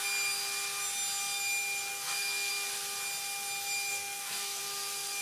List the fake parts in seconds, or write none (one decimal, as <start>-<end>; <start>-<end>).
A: 1.9-2.5; 3.9-4.6